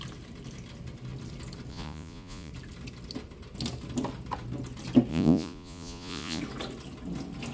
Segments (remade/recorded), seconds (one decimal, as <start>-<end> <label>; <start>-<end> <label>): 0.0-1.7 recorded; 1.7-2.5 remade; 2.5-5.1 recorded; 5.1-6.4 remade; 6.4-7.5 recorded